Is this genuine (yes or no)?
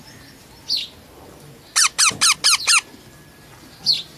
yes